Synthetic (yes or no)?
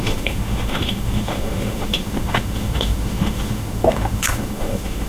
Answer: yes